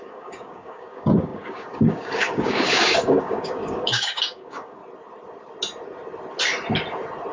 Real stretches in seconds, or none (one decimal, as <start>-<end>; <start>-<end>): 4.8-7.3